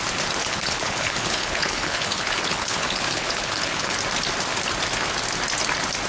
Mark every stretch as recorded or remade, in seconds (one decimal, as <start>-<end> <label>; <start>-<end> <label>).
0.0-0.4 recorded; 0.4-3.9 remade; 3.9-6.1 recorded